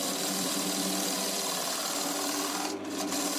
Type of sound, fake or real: fake